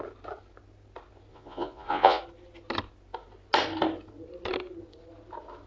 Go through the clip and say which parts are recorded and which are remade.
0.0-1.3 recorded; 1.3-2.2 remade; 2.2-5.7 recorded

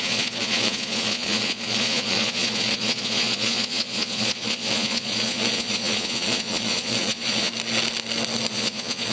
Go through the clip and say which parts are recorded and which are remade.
0.0-7.5 remade; 7.5-8.5 recorded; 8.5-9.1 remade

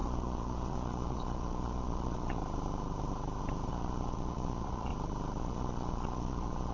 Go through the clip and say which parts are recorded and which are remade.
0.0-2.4 remade; 2.4-3.7 recorded; 3.7-4.9 remade; 4.9-5.4 recorded; 5.4-6.7 remade